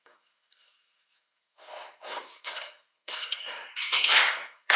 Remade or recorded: remade